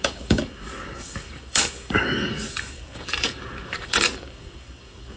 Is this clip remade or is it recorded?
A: remade